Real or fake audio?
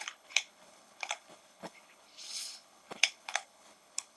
fake